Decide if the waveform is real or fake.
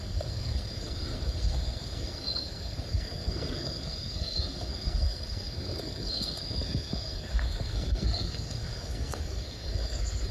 fake